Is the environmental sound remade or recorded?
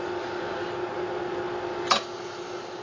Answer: recorded